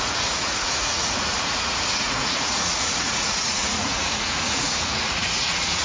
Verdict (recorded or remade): remade